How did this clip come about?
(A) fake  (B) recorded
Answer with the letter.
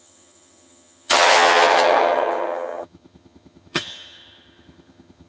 A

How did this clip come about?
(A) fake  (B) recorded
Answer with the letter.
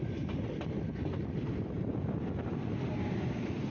B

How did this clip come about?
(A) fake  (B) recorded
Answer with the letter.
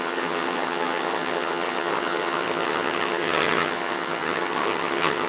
A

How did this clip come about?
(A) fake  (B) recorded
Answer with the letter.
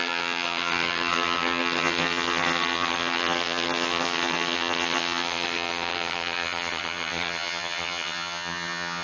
A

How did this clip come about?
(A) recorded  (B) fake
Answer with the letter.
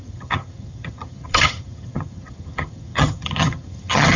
B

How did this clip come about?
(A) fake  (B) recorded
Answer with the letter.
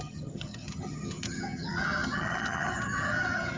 A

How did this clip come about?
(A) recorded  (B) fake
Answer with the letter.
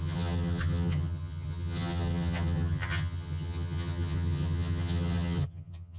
B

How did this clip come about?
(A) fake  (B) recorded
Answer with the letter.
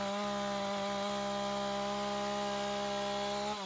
B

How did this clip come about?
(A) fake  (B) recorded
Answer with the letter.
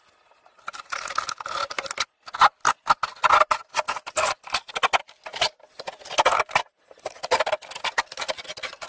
B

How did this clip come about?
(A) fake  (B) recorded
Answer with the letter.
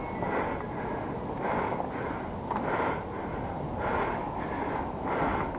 B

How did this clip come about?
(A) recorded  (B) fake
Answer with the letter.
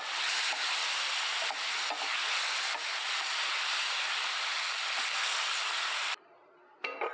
A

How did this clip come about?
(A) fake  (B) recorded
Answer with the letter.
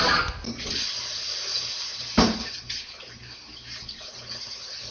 B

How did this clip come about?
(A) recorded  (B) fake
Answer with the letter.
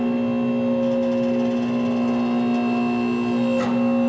A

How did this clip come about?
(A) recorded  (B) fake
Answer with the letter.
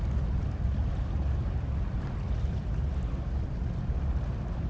A